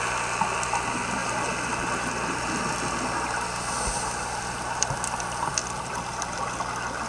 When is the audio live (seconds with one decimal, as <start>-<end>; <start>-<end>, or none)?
0.0-1.2; 3.1-5.6